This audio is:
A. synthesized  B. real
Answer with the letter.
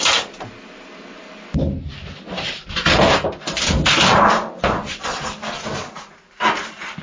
B